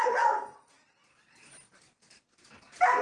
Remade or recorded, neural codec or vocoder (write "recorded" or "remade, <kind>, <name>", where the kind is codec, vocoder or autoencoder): recorded